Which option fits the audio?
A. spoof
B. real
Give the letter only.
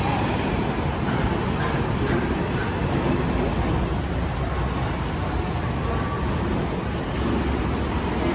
B